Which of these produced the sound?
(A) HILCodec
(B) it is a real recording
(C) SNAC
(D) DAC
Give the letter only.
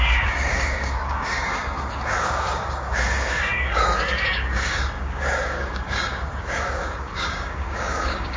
D